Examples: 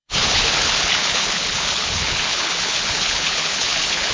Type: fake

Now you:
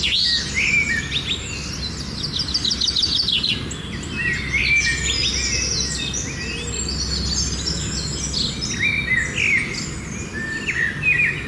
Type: real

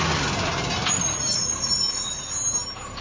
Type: real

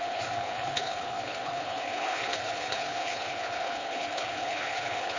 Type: fake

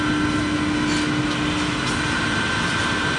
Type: real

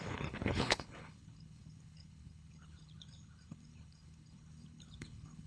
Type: fake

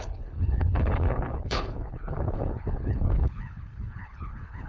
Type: fake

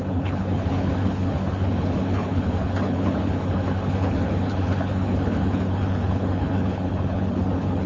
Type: fake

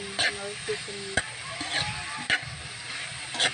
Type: real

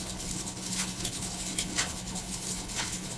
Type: fake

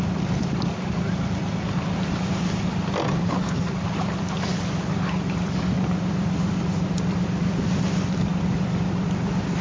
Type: real